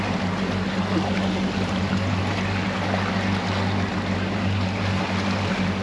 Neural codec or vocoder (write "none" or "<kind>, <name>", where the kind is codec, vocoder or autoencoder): none